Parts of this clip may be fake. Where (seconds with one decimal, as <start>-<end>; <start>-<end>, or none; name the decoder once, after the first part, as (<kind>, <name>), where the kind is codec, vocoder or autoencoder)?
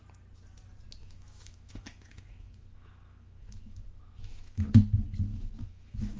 1.0-4.7 (autoencoder, DAC-VAE); 5.3-6.2